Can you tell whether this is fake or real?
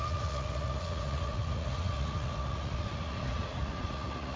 fake